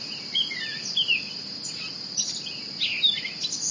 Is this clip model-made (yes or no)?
no